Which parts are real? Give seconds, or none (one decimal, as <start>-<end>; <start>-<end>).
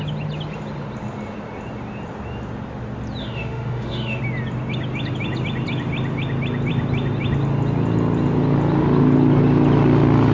0.0-3.2; 4.2-10.3